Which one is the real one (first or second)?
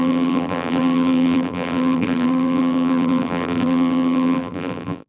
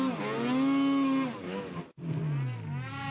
second